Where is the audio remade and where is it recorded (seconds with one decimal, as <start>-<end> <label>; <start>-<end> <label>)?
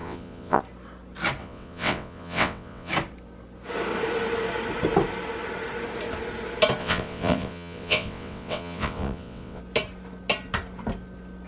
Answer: 0.0-0.6 remade; 0.6-1.4 recorded; 1.4-2.9 remade; 2.9-6.8 recorded; 6.8-9.6 remade; 9.6-11.5 recorded